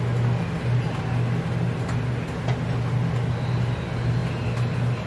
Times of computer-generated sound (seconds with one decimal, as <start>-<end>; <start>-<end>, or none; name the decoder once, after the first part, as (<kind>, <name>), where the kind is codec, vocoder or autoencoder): none